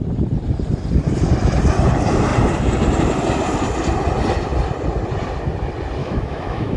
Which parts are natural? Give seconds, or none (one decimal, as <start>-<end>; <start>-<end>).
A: 0.0-6.0

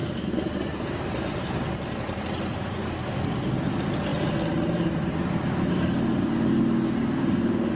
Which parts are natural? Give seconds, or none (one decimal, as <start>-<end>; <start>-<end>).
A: 0.0-7.8

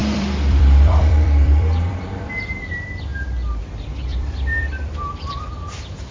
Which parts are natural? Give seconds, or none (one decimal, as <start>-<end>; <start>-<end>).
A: 2.3-4.1; 5.5-6.1

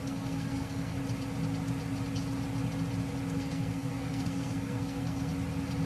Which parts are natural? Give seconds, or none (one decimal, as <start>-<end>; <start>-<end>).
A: 1.0-3.3; 5.3-5.9

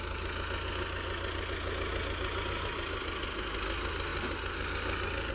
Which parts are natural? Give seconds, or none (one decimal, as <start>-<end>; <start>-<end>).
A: 0.0-5.3

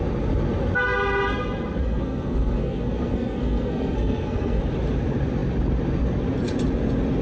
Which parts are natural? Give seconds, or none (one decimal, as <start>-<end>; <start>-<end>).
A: 0.0-1.8; 4.6-7.2